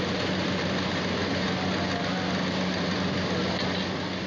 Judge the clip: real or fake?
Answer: real